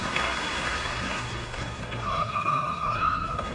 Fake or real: fake